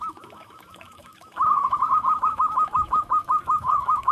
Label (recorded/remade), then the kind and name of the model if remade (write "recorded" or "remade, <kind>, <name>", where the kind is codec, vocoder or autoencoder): remade, autoencoder, DAC-VAE